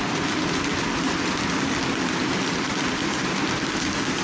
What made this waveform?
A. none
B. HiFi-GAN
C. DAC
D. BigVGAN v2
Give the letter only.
A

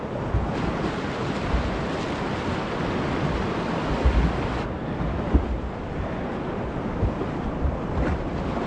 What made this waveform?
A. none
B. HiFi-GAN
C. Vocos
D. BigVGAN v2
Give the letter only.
A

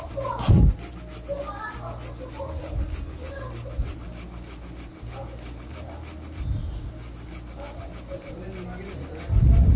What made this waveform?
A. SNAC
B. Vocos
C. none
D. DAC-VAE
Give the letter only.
C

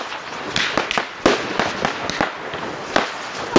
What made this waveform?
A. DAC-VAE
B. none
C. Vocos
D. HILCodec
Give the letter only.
B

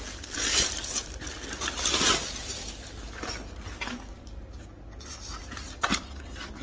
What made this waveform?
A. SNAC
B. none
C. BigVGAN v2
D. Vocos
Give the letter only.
B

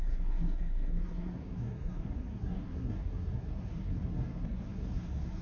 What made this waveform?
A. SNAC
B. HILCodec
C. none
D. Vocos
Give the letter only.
A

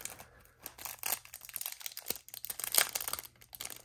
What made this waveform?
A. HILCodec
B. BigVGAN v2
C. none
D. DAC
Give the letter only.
C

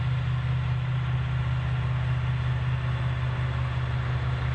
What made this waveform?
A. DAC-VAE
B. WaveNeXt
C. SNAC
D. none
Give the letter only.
D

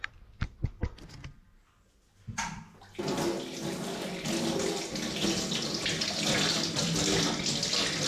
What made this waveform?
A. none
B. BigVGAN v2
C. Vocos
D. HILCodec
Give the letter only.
A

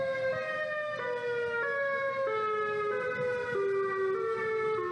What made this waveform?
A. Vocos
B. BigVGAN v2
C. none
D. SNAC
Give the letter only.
C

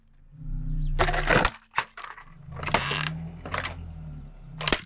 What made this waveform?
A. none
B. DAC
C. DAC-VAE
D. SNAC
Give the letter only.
A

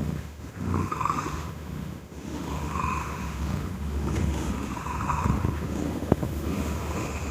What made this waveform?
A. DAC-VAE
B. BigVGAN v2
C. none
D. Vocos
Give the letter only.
A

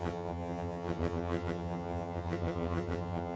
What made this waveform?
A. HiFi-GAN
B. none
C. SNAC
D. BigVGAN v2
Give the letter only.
A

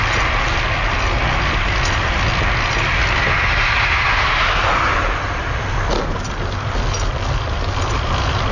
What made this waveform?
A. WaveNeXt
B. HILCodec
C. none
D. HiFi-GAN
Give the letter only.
C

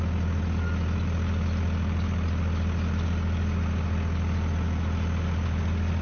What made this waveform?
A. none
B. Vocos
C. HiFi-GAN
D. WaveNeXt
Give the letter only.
A